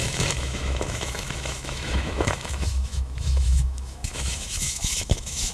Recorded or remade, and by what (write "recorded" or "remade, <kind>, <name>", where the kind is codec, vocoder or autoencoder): remade, autoencoder, DAC-VAE